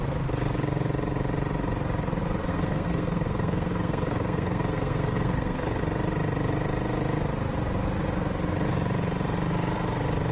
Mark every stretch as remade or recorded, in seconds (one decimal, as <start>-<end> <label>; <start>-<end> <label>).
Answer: 0.0-2.5 recorded; 2.5-5.8 remade; 5.8-10.3 recorded